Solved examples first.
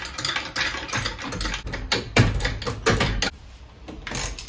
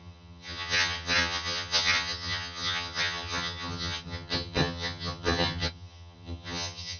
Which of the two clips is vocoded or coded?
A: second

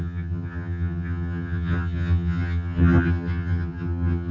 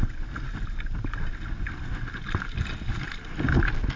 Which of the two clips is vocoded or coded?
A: first